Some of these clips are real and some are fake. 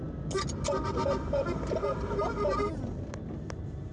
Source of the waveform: real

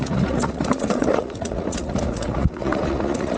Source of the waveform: fake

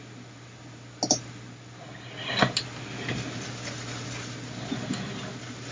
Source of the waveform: real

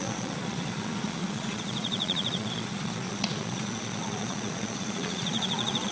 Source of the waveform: fake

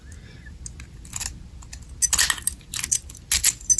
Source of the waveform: real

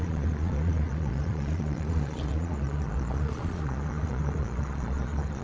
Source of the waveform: fake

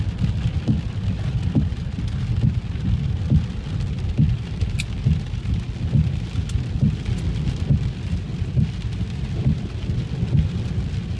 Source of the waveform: real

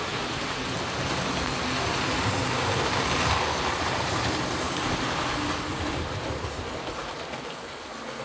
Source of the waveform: real